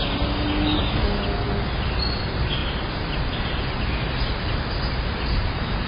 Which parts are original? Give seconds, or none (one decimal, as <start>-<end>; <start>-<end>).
0.0-5.9